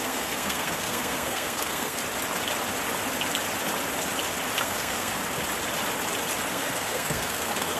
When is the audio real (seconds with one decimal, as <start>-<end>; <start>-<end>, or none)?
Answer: 2.0-4.6; 5.2-6.5